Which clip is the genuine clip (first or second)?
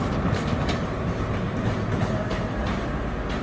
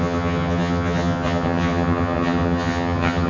first